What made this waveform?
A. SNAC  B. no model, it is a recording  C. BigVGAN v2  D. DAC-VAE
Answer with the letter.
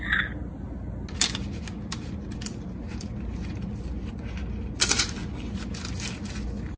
B